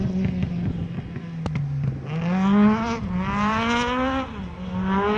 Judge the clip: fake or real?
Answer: real